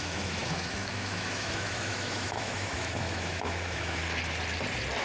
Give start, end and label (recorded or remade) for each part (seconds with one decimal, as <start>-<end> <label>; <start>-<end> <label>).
0.0-4.0 remade; 4.0-5.0 recorded

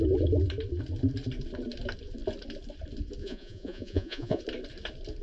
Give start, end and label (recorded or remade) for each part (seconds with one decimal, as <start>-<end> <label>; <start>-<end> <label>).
0.0-3.2 recorded; 3.2-4.4 remade; 4.4-5.2 recorded

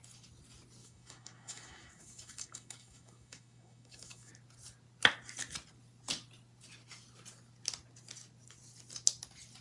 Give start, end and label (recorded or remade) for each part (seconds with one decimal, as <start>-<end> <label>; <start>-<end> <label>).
0.0-0.8 recorded; 0.8-4.3 remade; 4.3-9.6 recorded

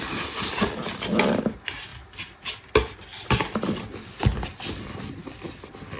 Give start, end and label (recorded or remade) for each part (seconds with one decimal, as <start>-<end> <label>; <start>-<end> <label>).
0.0-6.0 recorded